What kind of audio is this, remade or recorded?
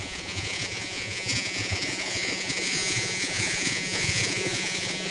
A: remade